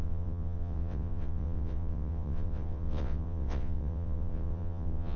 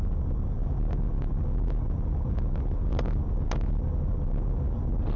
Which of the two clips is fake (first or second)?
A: first